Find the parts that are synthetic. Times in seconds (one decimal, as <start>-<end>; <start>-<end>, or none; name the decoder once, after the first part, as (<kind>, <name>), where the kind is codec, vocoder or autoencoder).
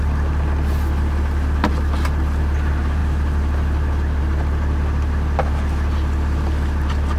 none